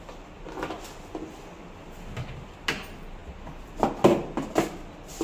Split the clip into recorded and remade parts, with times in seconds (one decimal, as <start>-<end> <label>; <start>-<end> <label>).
0.0-5.2 recorded